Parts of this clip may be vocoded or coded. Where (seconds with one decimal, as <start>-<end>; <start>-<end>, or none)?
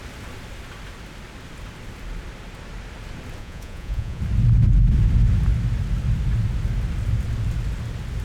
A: 3.4-4.2